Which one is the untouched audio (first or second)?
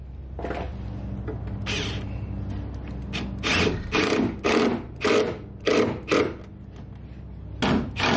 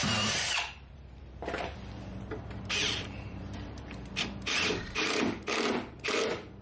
first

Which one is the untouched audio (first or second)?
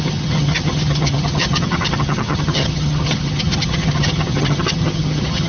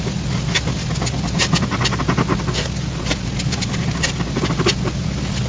second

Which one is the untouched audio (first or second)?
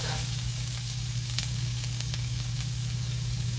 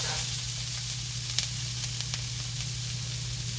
second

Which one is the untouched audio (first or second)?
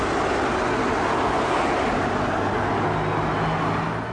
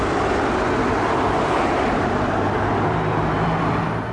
first